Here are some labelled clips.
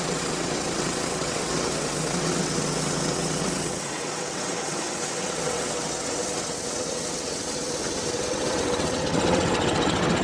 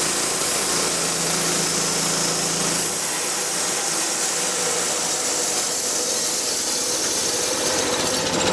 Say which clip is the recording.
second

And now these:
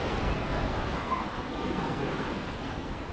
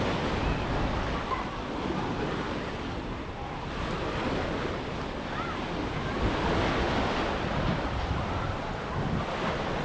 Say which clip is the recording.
second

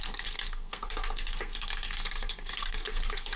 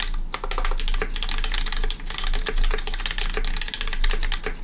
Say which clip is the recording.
second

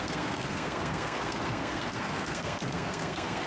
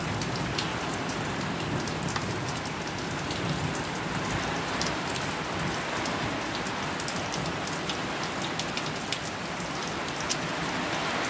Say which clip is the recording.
second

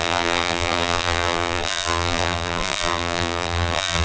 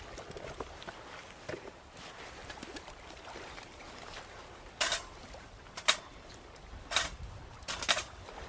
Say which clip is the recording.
second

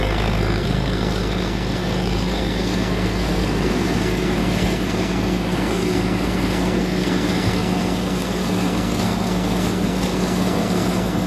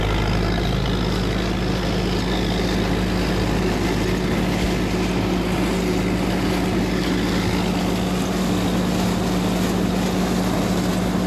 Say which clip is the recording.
second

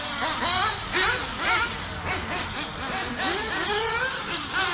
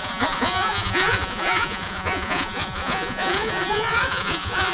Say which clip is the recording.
first